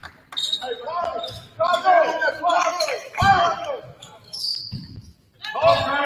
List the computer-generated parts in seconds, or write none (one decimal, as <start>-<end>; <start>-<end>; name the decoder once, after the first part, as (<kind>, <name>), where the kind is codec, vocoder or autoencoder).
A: 1.2-5.3 (autoencoder, DAC-VAE)